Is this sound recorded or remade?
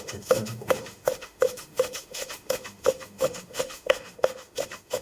remade